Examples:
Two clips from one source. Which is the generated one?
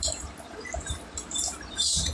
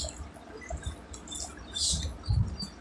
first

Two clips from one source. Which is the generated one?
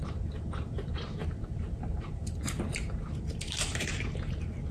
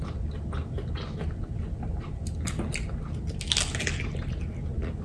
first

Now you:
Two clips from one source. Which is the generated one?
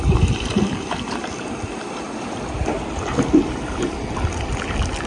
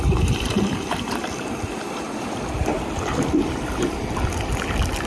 second